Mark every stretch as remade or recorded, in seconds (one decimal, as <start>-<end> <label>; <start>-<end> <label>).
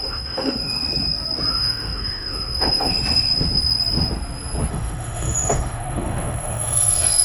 0.0-0.8 remade; 0.8-1.5 recorded; 1.5-2.9 remade; 2.9-4.7 recorded; 4.7-7.2 remade